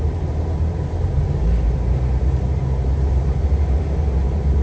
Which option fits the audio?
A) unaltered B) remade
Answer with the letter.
B